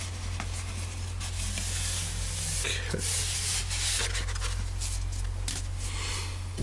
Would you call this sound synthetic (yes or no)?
no